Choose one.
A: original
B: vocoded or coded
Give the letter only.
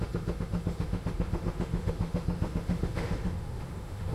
B